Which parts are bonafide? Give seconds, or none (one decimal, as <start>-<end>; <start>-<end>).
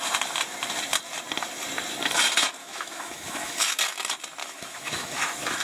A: 0.0-2.6; 3.8-4.4